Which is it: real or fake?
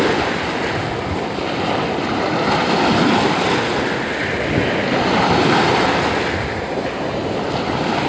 real